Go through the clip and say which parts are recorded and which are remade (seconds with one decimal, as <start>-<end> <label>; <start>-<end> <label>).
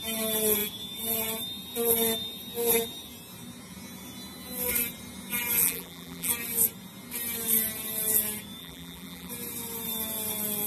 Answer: 0.0-5.6 recorded; 5.6-6.3 remade; 6.3-8.6 recorded; 8.6-9.3 remade; 9.3-10.7 recorded